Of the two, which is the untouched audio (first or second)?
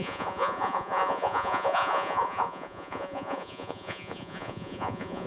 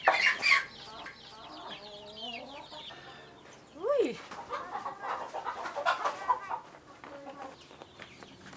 second